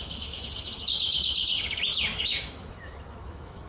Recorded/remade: remade